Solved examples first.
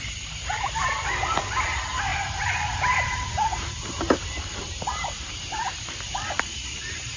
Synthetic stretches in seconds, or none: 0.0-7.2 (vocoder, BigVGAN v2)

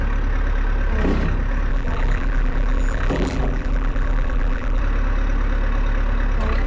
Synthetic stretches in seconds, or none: 1.7-4.8 (vocoder, BigVGAN v2)

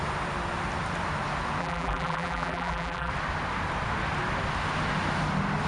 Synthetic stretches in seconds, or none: 1.6-3.1 (vocoder, BigVGAN v2)

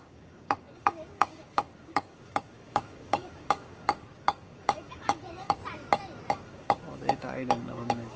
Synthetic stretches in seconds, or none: 0.0-5.6 (codec, DAC); 6.3-8.2

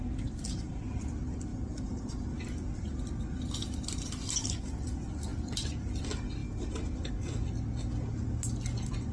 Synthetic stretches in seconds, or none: none